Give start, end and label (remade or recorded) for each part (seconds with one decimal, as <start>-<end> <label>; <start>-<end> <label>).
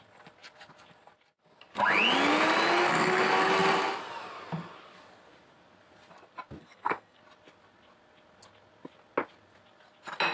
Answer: 0.0-6.6 recorded; 6.6-7.2 remade; 7.2-10.3 recorded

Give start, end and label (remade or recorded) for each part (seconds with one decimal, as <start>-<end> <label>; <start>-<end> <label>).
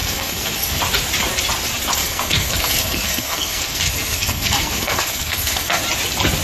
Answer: 0.0-0.8 remade; 0.8-2.0 recorded; 2.0-5.8 remade; 5.8-6.4 recorded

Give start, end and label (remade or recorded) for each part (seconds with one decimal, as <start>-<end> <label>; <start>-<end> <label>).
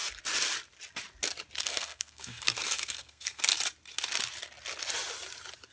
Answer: 0.0-1.6 recorded; 1.6-3.5 remade; 3.5-5.7 recorded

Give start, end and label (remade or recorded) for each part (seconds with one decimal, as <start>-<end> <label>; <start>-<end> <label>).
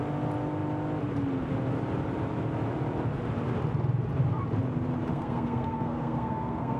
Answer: 0.0-5.1 recorded; 5.1-6.8 remade